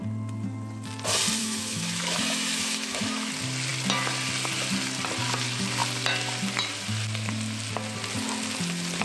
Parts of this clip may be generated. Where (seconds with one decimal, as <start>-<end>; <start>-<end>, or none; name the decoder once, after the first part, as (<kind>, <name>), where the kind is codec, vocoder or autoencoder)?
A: 1.4-3.3 (autoencoder, DAC-VAE)